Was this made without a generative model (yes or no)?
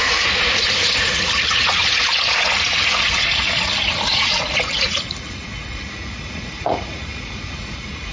no